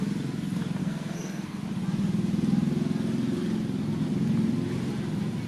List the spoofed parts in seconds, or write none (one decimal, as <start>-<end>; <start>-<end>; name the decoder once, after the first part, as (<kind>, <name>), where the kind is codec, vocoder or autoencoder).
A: 0.8-1.6 (codec, SNAC)